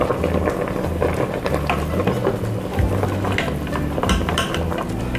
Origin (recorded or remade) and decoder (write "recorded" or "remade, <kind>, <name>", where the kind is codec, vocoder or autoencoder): recorded